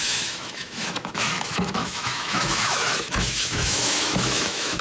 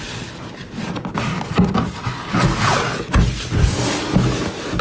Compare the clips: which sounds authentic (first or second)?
second